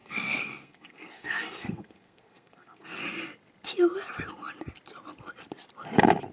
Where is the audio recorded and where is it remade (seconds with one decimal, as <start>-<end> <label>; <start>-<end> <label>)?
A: 0.0-3.0 remade; 3.0-6.3 recorded